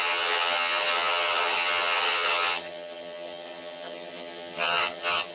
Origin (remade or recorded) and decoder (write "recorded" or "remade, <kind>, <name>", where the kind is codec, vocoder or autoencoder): remade, vocoder, HiFi-GAN